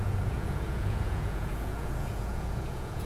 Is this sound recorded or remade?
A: remade